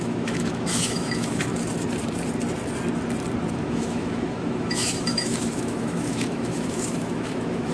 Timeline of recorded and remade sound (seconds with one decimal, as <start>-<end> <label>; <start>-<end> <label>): 0.0-1.5 remade; 1.5-3.5 recorded; 3.5-7.7 remade